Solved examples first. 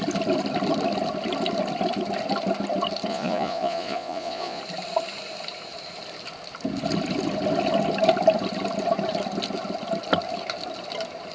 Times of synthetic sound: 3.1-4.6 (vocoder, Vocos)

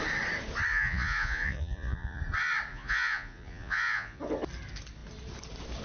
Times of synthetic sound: 0.7-2.2 (vocoder, Vocos); 2.7-4.2

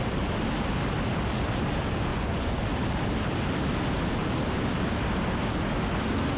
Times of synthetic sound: 2.1-2.6 (vocoder, Vocos)